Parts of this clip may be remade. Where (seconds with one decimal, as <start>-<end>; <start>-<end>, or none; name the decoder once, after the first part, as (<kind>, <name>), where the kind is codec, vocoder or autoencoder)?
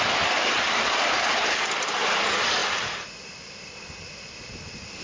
none